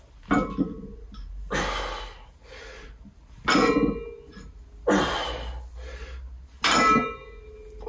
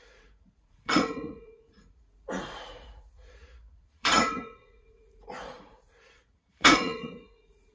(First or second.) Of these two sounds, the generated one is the second